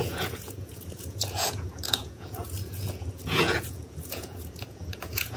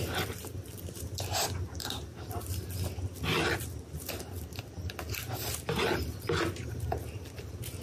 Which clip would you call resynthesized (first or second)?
first